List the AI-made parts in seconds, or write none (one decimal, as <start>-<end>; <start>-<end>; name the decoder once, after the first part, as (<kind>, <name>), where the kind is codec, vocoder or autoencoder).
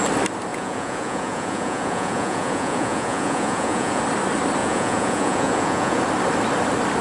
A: 0.5-4.0 (vocoder, Vocos); 4.6-6.0